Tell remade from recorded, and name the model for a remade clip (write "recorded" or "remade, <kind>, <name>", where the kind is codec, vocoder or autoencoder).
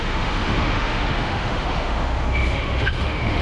remade, autoencoder, DAC-VAE